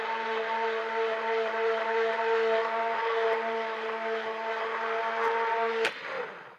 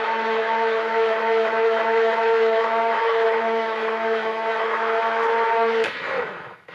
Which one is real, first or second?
first